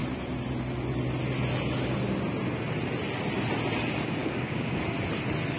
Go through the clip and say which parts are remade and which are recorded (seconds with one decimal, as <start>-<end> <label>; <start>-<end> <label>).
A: 0.0-4.2 recorded; 4.2-4.8 remade; 4.8-5.6 recorded

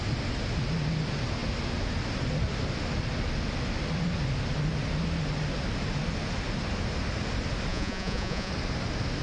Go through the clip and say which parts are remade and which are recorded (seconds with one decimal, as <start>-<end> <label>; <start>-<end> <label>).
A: 0.0-7.7 recorded; 7.7-8.5 remade; 8.5-9.2 recorded

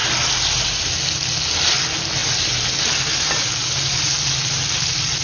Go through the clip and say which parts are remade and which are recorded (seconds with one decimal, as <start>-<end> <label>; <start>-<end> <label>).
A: 0.0-5.2 recorded

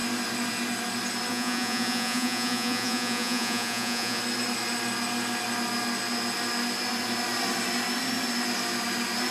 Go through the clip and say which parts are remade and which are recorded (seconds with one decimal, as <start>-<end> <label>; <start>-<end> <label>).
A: 0.0-1.3 recorded; 1.3-4.2 remade; 4.2-9.3 recorded

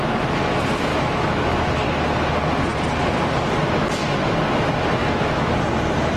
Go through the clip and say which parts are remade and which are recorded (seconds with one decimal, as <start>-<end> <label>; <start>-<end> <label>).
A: 0.0-0.9 recorded; 0.9-1.7 remade; 1.7-5.0 recorded; 5.0-5.5 remade; 5.5-6.2 recorded

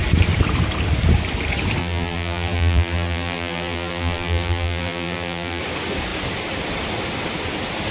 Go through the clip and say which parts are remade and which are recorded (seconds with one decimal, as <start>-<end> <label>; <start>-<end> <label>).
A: 0.0-1.8 recorded; 1.8-5.6 remade; 5.6-7.9 recorded

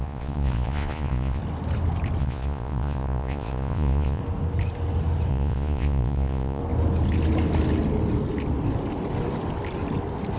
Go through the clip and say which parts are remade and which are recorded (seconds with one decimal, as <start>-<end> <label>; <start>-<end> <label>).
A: 0.0-1.4 remade; 1.4-2.2 recorded; 2.2-4.2 remade; 4.2-5.3 recorded; 5.3-6.6 remade; 6.6-10.4 recorded

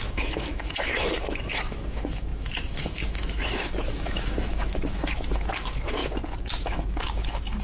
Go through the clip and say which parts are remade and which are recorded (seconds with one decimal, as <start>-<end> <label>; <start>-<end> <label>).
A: 0.0-6.0 remade; 6.0-6.6 recorded; 6.6-7.6 remade